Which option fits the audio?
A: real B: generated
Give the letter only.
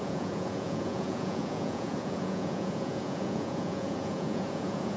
B